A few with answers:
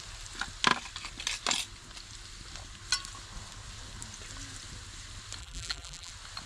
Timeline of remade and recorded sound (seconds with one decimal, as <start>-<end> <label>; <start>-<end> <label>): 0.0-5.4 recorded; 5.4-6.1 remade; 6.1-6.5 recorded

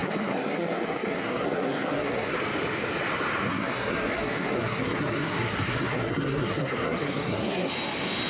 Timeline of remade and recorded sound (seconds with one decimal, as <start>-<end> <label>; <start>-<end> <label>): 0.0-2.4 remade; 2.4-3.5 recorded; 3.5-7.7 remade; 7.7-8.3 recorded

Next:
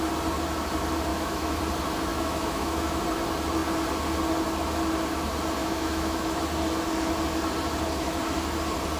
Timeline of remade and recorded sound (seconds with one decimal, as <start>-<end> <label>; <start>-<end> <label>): 0.0-1.1 recorded; 1.1-1.6 remade; 1.6-2.1 recorded; 2.1-3.0 remade; 3.0-5.6 recorded; 5.6-6.4 remade; 6.4-9.0 recorded